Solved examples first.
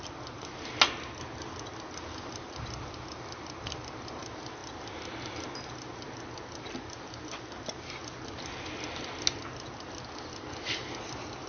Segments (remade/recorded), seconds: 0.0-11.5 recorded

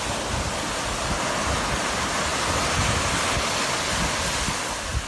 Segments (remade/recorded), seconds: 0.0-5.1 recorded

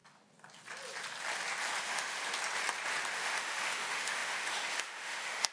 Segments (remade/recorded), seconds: 0.0-1.8 recorded; 1.8-2.2 remade; 2.2-3.1 recorded; 3.1-5.5 remade